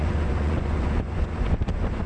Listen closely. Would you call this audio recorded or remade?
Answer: remade